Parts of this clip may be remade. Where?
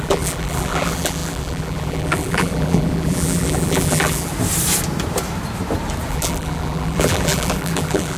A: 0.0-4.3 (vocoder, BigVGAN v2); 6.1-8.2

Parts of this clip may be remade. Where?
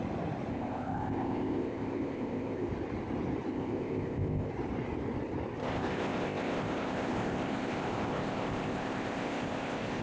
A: 0.5-2.7 (codec, ZipCodec); 3.5-4.5; 5.6-10.0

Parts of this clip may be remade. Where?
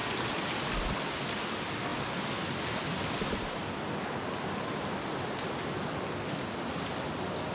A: none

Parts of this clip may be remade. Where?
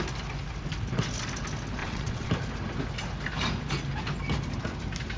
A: 1.8-2.3 (vocoder, WaveNeXt)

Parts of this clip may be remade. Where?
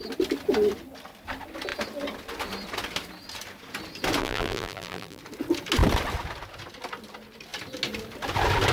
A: 4.2-5.2 (vocoder, BigVGAN v2)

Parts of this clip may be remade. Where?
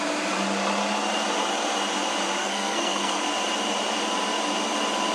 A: 2.4-3.2 (codec, SNAC)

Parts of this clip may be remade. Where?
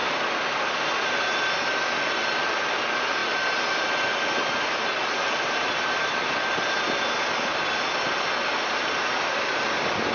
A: none